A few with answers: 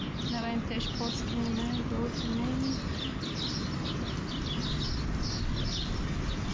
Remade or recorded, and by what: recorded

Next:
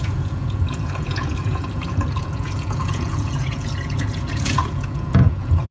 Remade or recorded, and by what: remade, vocoder, Vocos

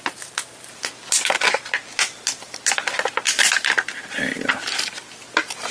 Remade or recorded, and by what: recorded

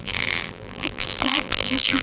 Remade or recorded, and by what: remade, vocoder, BigVGAN v2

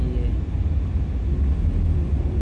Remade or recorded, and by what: recorded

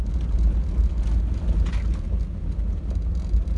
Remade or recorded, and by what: recorded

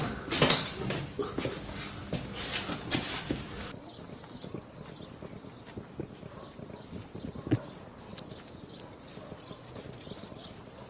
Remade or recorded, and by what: recorded